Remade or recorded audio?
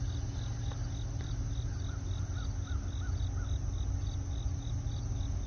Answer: recorded